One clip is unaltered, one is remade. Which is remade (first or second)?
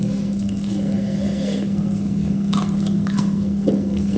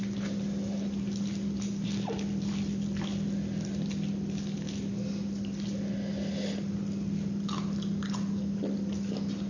first